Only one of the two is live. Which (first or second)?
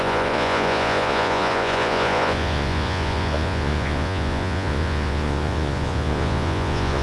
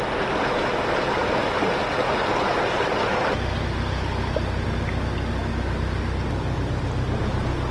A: second